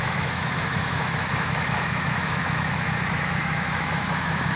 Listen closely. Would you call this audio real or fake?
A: fake